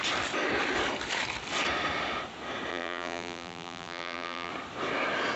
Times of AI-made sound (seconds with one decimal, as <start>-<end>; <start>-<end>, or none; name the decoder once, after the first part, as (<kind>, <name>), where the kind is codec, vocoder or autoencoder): 2.7-4.5 (vocoder, BigVGAN v2)